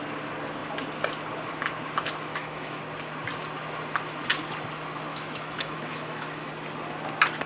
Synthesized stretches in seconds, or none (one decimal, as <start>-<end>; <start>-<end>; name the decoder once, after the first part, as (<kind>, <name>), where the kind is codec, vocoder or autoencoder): 2.3-2.8 (autoencoder, DAC-VAE); 5.1-6.5